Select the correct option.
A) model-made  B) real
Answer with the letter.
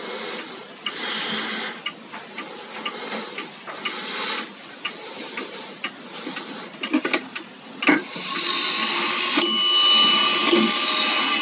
B